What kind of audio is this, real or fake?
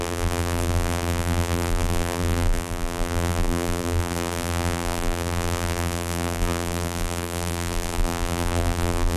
fake